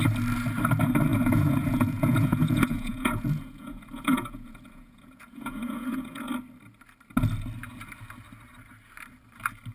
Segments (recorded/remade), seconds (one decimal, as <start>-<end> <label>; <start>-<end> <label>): 0.0-1.1 recorded; 1.1-6.3 remade; 6.3-9.7 recorded